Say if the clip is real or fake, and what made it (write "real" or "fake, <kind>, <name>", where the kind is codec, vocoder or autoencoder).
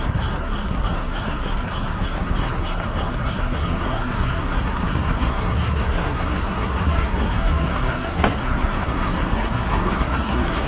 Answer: fake, codec, SNAC